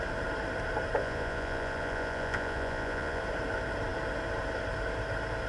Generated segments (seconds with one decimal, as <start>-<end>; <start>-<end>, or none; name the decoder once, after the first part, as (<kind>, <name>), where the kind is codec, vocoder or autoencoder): 1.0-3.2 (vocoder, Vocos)